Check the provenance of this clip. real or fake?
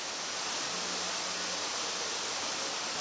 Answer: real